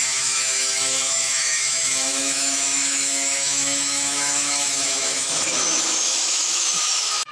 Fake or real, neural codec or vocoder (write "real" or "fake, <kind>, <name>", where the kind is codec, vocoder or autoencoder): fake, autoencoder, DAC-VAE